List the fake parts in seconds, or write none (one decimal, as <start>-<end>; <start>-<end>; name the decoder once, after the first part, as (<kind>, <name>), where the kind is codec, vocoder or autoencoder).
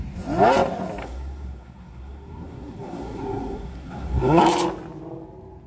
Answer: 1.0-4.4 (codec, SNAC)